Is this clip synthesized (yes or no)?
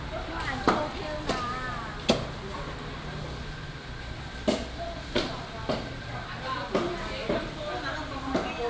no